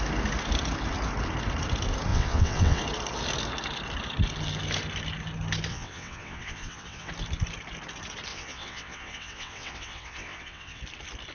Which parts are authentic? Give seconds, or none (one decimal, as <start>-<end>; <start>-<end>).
0.0-2.1; 2.8-5.7; 7.1-8.3; 10.8-11.3